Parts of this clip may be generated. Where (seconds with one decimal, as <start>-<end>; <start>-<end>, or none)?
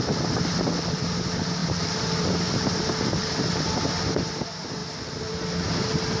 1.6-2.7